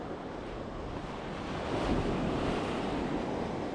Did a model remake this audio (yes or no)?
no